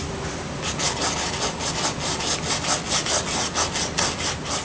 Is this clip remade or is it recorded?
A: recorded